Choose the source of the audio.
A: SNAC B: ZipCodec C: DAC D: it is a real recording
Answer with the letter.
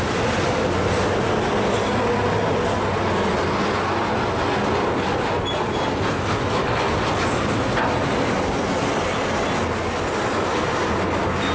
D